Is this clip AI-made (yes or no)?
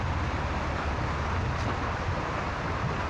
no